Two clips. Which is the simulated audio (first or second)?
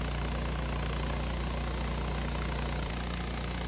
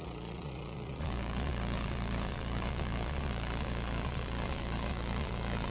second